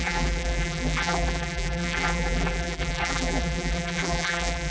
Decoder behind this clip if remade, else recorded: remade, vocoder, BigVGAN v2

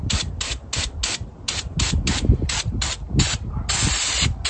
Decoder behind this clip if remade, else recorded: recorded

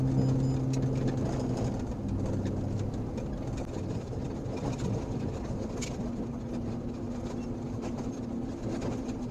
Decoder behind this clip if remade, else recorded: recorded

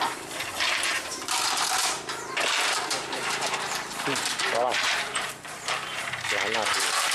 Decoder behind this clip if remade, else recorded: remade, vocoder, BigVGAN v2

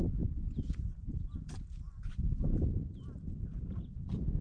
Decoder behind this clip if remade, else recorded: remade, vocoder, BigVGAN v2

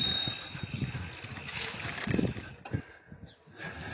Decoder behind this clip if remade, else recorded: recorded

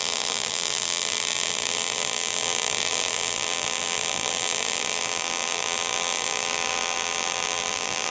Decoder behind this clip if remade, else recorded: remade, vocoder, BigVGAN v2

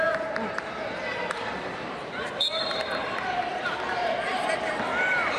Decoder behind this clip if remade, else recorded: remade, vocoder, BigVGAN v2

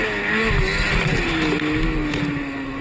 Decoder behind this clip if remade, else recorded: recorded